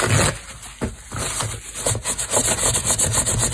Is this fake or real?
real